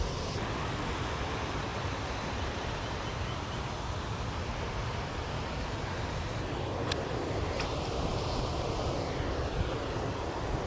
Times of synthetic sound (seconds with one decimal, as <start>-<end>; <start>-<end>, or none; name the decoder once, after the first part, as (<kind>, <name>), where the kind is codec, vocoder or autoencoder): none